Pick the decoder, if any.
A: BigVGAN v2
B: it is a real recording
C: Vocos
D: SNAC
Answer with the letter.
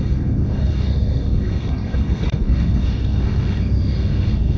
D